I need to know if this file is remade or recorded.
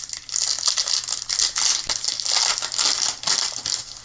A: recorded